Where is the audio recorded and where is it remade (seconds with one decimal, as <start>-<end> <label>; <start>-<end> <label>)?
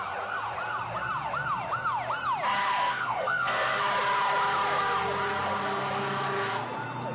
0.0-2.8 recorded; 2.8-3.8 remade; 3.8-7.1 recorded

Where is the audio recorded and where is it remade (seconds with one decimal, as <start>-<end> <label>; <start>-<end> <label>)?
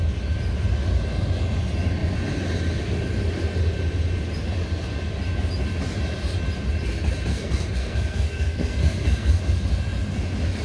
0.0-7.3 recorded; 7.3-9.4 remade; 9.4-10.6 recorded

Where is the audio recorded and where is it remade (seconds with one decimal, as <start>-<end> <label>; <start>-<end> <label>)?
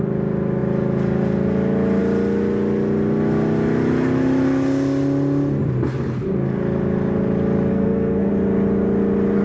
0.0-7.7 recorded; 7.7-8.3 remade; 8.3-9.4 recorded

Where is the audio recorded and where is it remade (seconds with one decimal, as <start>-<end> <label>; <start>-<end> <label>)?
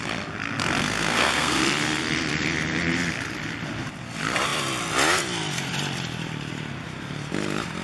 0.0-0.8 recorded; 0.8-1.6 remade; 1.6-7.8 recorded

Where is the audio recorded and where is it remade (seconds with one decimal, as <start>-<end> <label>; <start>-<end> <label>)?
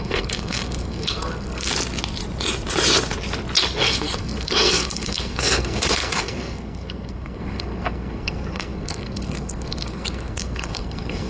0.0-1.7 remade; 1.7-3.8 recorded; 3.8-11.3 remade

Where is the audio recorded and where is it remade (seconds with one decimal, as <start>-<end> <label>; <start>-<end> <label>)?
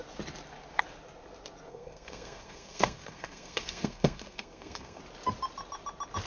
0.0-1.7 recorded; 1.7-5.0 remade; 5.0-6.3 recorded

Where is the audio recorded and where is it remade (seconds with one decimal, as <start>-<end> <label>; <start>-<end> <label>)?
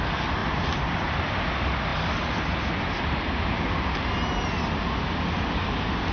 0.0-6.1 recorded